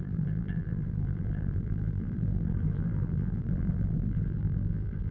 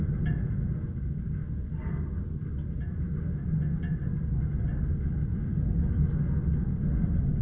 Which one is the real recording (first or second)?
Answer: second